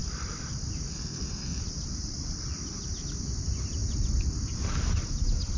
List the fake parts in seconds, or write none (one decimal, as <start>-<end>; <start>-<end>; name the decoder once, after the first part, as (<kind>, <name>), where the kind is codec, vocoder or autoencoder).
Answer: 0.9-1.6 (codec, SNAC)